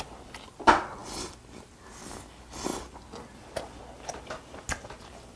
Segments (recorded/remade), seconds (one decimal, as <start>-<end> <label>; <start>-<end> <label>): 0.0-5.4 recorded